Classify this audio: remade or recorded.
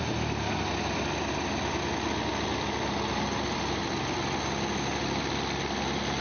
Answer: recorded